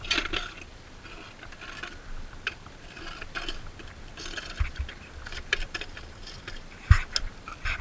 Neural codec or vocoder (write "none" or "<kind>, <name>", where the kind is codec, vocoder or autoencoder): none